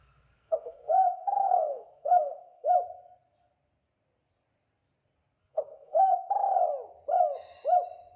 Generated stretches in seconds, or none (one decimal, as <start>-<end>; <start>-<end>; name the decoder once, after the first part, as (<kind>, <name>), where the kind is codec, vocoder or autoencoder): 0.0-2.7 (codec, SNAC); 5.4-6.3